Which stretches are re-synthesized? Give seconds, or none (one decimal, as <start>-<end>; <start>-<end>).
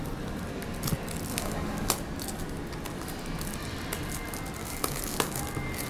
1.3-1.9; 4.6-5.4